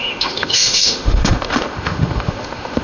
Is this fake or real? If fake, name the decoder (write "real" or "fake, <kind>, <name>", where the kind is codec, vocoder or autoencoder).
fake, autoencoder, DAC-VAE